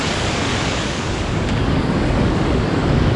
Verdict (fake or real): fake